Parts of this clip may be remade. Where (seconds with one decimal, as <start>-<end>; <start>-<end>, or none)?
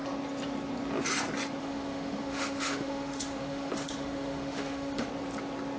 1.6-5.1